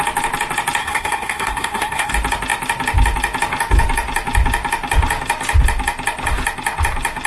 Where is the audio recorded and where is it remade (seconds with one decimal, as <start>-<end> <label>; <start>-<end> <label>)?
0.0-0.8 recorded; 0.8-2.1 remade; 2.1-7.3 recorded